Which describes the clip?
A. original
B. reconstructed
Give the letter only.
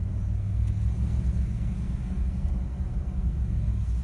B